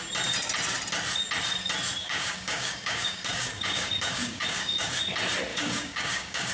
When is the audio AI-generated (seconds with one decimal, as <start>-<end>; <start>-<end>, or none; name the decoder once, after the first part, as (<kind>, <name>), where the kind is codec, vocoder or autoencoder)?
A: 2.0-5.0 (codec, DAC); 5.5-6.5